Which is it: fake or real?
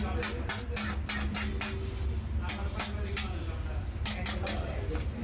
real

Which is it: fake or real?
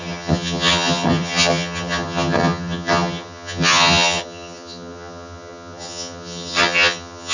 fake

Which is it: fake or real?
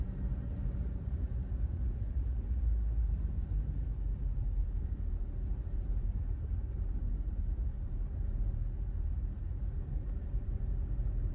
fake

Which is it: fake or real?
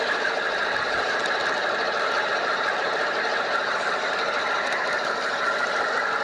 real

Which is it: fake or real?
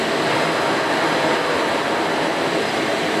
real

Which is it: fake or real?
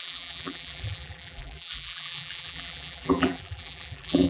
fake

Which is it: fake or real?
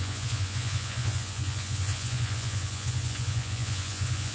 fake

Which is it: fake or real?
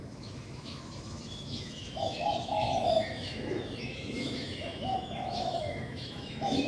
fake